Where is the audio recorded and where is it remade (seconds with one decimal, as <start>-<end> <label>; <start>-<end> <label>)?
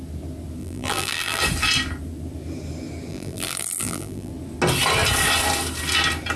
0.0-0.6 recorded; 0.6-1.4 remade; 1.4-3.1 recorded; 3.1-4.3 remade; 4.3-6.4 recorded